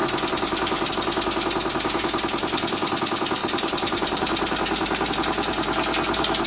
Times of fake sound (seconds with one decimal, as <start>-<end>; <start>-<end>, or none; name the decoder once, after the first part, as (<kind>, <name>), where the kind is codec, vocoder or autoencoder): 0.0-0.9 (vocoder, BigVGAN v2); 3.4-5.1